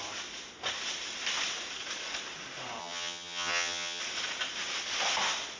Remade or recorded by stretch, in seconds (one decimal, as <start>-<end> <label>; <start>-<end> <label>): 0.0-2.8 recorded; 2.8-4.0 remade; 4.0-5.6 recorded